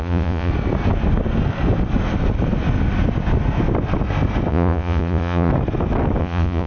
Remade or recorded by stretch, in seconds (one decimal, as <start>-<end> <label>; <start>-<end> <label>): 0.0-0.5 remade; 0.5-4.5 recorded; 4.5-5.5 remade; 5.5-6.2 recorded; 6.2-6.7 remade